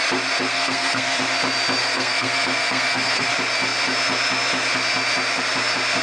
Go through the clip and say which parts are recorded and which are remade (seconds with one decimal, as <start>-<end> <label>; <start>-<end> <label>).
0.0-0.5 recorded; 0.5-1.2 remade; 1.2-1.8 recorded; 1.8-3.3 remade; 3.3-6.0 recorded

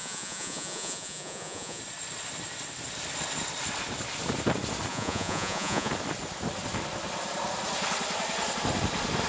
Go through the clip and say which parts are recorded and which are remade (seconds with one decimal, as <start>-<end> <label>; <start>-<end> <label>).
0.0-1.8 remade; 1.8-4.9 recorded; 4.9-5.9 remade; 5.9-9.3 recorded

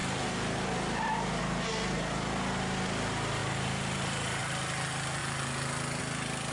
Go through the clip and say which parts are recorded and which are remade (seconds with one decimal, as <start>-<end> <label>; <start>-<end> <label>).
0.0-1.4 remade; 1.4-3.4 recorded; 3.4-4.4 remade; 4.4-6.5 recorded

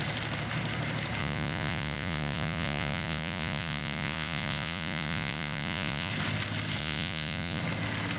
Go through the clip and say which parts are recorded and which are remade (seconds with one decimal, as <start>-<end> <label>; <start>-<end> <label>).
0.0-1.2 recorded; 1.2-6.1 remade; 6.1-6.8 recorded; 6.8-7.6 remade; 7.6-8.2 recorded